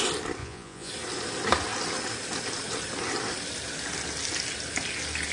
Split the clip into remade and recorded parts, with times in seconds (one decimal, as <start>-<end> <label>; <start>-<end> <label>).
0.0-0.4 recorded; 0.4-0.9 remade; 0.9-5.3 recorded